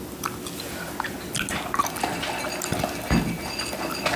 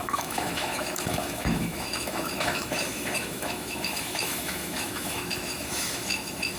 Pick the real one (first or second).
first